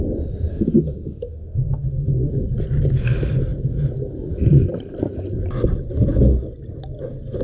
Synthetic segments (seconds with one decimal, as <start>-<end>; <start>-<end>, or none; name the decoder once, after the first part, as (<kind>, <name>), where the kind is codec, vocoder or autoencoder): 0.5-2.3 (autoencoder, DAC-VAE)